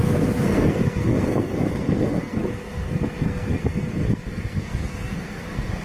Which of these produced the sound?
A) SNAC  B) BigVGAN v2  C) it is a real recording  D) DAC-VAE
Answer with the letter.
A